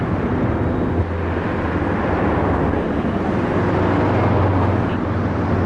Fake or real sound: real